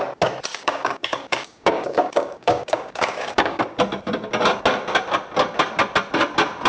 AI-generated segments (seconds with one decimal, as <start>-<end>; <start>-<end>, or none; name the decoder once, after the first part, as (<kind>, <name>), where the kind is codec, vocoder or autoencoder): 0.5-3.6 (codec, DAC)